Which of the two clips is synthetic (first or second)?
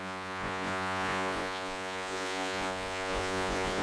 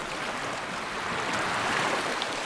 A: first